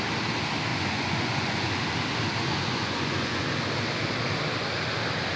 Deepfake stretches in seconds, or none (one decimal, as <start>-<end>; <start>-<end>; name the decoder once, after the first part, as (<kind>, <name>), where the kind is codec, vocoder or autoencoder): 0.7-1.7 (vocoder, Vocos); 2.4-3.5